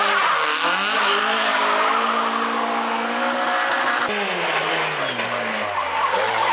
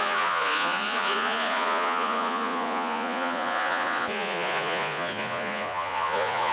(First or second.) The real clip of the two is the first